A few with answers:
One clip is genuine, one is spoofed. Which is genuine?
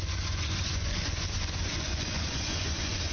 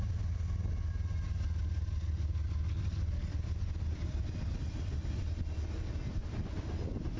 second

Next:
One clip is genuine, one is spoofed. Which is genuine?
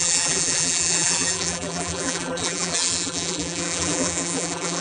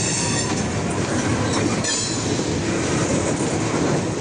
second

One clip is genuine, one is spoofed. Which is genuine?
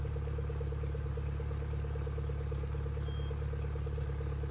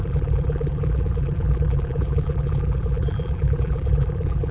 first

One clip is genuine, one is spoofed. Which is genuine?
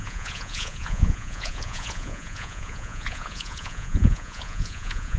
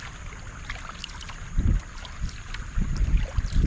second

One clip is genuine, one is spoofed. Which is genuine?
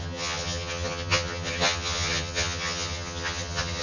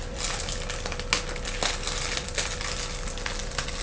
second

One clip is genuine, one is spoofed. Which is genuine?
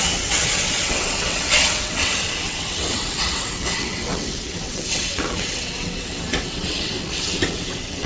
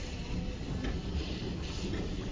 second